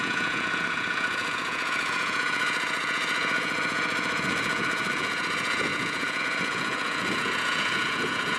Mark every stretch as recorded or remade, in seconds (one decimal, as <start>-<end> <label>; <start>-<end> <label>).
0.0-8.4 remade